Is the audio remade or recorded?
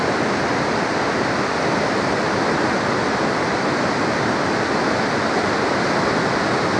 recorded